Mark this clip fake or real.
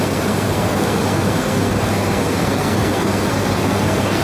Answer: fake